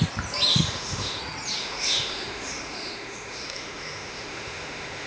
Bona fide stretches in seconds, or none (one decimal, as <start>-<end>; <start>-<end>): 0.0-0.5; 1.2-1.6